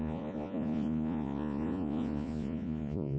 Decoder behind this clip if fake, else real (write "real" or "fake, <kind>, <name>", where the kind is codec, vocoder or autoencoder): fake, vocoder, Vocos